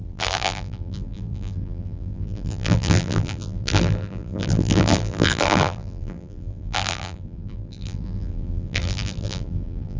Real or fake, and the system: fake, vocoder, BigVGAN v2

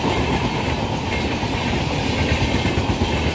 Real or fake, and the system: real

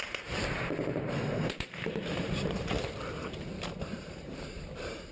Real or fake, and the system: fake, vocoder, BigVGAN v2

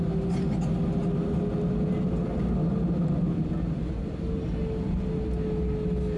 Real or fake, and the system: real